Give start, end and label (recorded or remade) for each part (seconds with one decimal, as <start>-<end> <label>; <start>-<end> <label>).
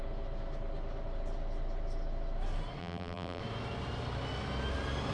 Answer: 0.0-2.8 recorded; 2.8-3.4 remade; 3.4-5.1 recorded